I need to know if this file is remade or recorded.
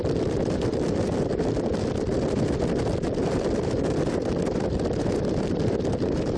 remade